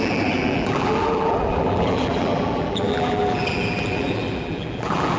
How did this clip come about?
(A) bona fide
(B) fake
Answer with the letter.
B